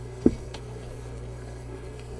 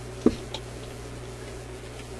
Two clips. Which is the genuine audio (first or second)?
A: second